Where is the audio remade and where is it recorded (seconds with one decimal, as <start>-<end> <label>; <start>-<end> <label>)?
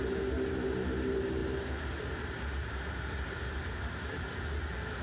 0.0-1.4 recorded; 1.4-4.4 remade; 4.4-5.0 recorded